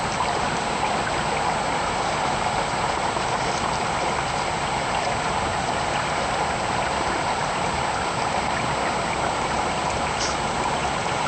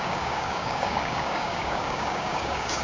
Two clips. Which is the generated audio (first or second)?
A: second